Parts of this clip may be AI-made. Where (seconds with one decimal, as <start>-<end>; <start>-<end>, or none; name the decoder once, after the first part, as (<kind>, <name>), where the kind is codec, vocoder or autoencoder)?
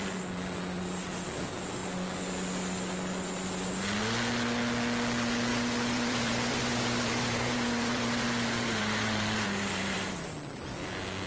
5.5-10.1 (vocoder, BigVGAN v2)